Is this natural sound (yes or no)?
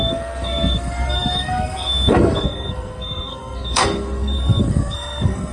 no